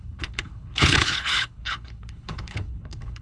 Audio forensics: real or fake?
fake